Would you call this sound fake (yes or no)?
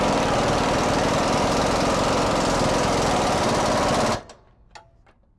no